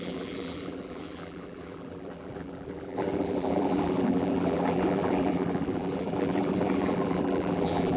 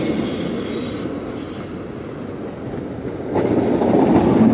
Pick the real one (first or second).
second